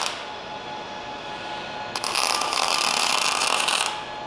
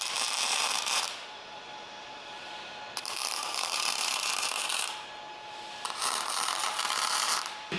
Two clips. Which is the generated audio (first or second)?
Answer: second